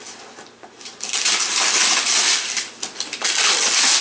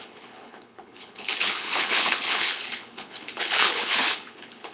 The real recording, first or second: first